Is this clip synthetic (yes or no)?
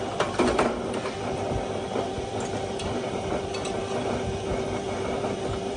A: yes